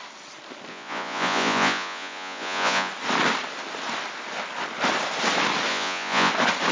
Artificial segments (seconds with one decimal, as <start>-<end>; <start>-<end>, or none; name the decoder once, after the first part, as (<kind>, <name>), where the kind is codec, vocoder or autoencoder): 0.7-2.9 (vocoder, Vocos); 5.7-6.3